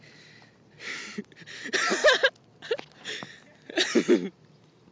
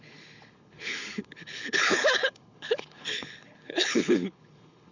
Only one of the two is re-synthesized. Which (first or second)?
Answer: second